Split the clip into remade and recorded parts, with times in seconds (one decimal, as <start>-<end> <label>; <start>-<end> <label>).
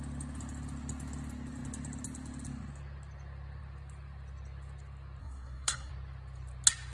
0.0-5.2 recorded; 5.2-5.9 remade; 5.9-6.9 recorded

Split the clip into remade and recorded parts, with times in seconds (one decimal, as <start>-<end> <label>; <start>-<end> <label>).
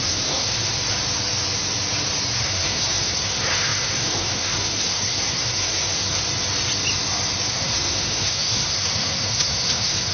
0.0-0.7 remade; 0.7-2.4 recorded; 2.4-6.2 remade; 6.2-7.5 recorded; 7.5-10.1 remade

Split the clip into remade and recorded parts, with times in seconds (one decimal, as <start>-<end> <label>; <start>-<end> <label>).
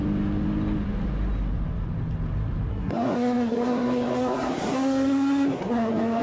0.0-2.7 recorded; 2.7-6.2 remade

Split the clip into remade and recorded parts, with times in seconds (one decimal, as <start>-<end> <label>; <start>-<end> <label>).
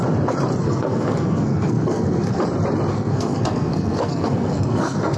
0.0-0.6 recorded; 0.6-2.4 remade; 2.4-2.9 recorded; 2.9-5.2 remade